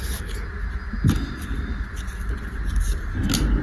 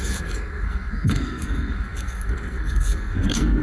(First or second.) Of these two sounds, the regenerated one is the second